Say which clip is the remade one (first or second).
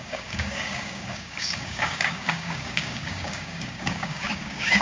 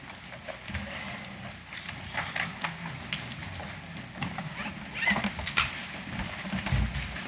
first